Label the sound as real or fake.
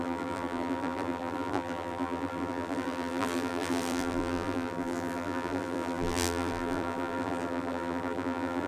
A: fake